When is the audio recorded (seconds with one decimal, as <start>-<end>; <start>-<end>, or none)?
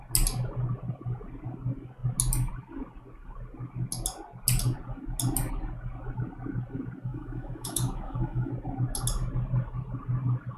0.0-7.1; 8.5-10.6